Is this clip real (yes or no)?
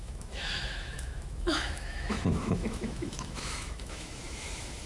no